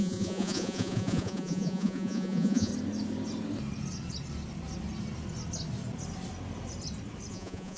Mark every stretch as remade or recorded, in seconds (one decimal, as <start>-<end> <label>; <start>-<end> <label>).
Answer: 0.0-2.7 remade; 2.7-7.3 recorded; 7.3-7.8 remade